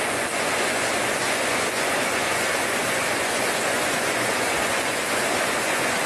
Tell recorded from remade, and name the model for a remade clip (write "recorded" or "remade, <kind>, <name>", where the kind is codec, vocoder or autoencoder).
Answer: remade, vocoder, Vocos